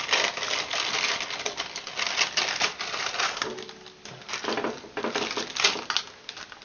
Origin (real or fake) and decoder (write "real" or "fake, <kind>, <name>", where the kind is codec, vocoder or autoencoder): real